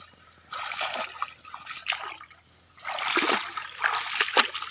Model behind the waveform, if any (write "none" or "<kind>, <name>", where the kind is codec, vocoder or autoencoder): none